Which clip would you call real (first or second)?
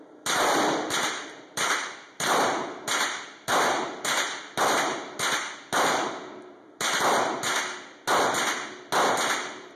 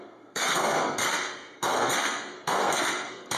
first